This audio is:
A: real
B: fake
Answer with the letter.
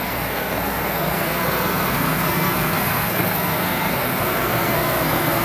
B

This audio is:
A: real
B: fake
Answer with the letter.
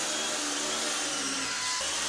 A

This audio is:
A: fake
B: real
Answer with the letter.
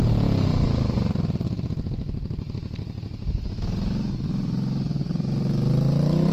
B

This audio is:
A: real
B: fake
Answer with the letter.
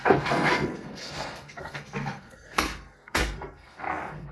B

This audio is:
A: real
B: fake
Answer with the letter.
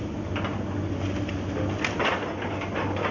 A